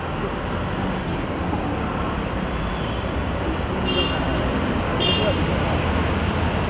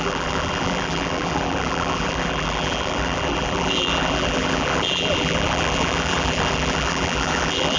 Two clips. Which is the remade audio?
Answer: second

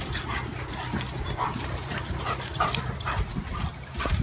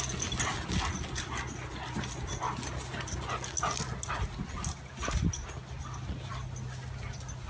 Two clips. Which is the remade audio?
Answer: first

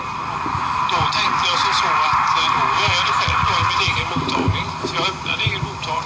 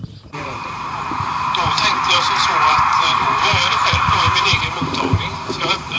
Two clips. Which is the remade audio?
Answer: second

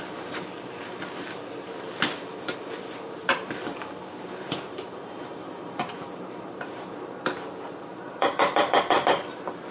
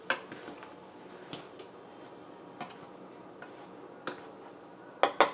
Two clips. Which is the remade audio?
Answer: first